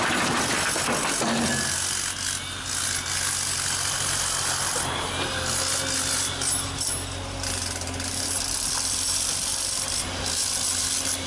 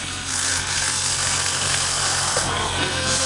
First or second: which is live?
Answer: first